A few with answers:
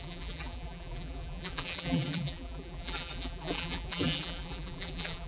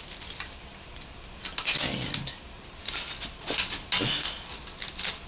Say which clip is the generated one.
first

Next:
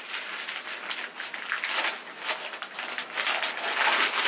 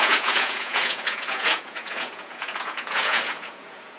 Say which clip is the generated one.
second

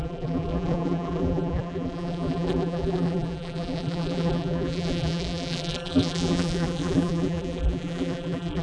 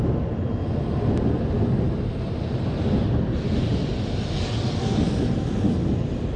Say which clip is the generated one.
first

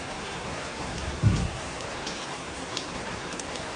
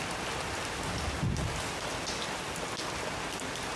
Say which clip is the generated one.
first